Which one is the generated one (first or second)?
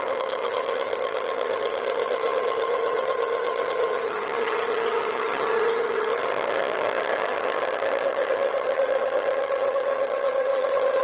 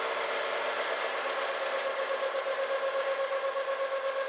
first